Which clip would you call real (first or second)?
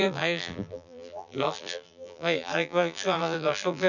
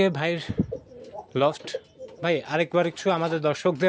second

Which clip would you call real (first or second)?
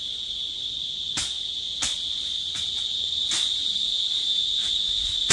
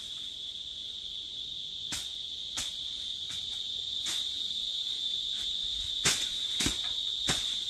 first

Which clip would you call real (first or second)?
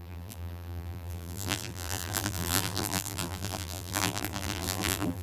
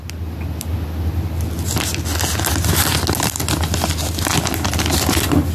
second